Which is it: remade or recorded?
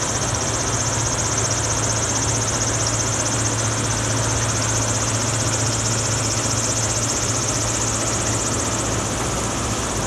recorded